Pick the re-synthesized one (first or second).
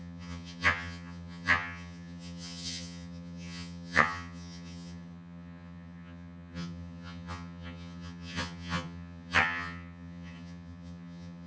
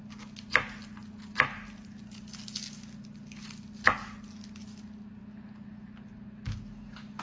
first